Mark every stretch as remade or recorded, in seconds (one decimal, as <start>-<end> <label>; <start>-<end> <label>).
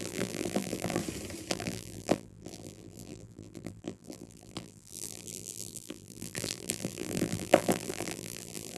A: 0.0-1.0 remade; 1.0-1.5 recorded; 1.5-8.8 remade